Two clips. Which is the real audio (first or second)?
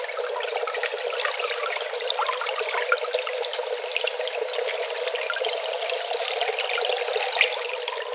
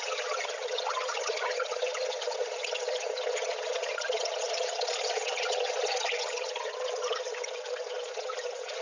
first